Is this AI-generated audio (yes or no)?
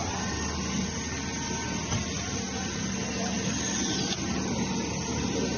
no